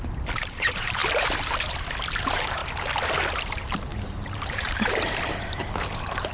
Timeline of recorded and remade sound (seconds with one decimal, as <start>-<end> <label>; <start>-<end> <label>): 0.0-1.0 remade; 1.0-2.2 recorded; 2.2-2.6 remade; 2.6-3.4 recorded; 3.4-6.3 remade